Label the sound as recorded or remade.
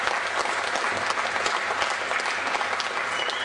recorded